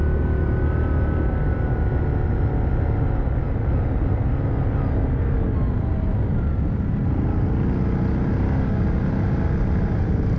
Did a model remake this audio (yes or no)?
no